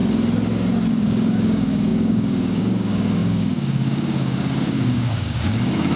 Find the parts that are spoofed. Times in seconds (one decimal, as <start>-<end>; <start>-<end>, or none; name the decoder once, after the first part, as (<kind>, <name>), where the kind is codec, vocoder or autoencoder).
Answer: 0.9-6.0 (codec, DAC)